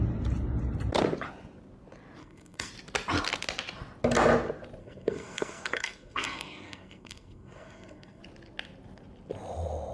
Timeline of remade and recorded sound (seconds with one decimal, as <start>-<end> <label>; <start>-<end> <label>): 0.0-2.2 recorded; 2.2-2.7 remade; 2.7-4.8 recorded; 4.8-8.2 remade; 8.2-9.9 recorded